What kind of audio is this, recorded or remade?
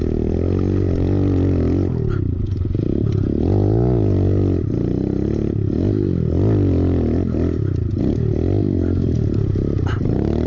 recorded